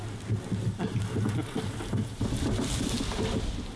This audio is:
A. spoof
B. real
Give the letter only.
B